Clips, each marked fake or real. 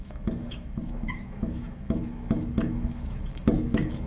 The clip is fake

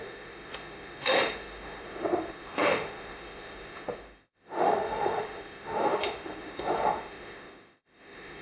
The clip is fake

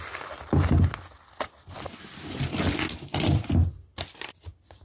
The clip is real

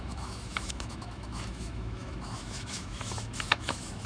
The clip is fake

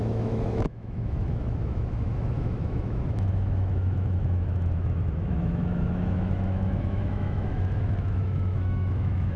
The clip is fake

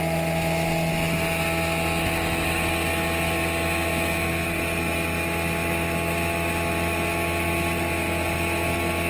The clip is real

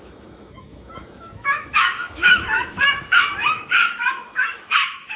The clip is fake